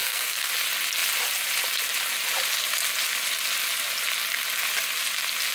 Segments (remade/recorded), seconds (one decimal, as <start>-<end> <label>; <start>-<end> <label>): 0.0-0.5 remade; 0.5-5.5 recorded